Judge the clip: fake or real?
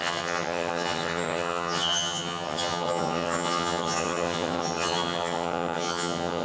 fake